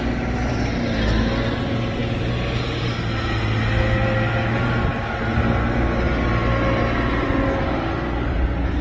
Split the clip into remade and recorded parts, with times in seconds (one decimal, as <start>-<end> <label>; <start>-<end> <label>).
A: 0.0-8.8 recorded